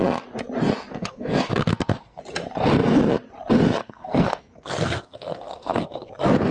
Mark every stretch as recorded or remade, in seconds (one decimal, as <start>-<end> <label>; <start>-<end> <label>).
0.0-0.9 recorded; 0.9-2.2 remade; 2.2-3.8 recorded; 3.8-6.1 remade; 6.1-6.5 recorded